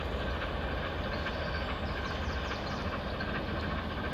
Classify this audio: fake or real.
real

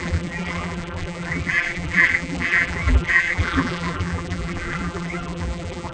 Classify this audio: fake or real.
fake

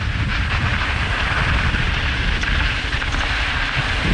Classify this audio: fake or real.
fake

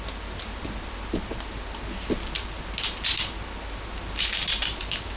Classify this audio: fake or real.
real